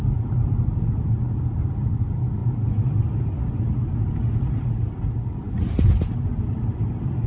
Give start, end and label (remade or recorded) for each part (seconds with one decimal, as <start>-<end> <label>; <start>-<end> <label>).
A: 0.0-7.3 recorded